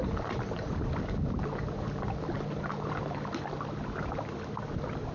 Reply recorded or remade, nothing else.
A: recorded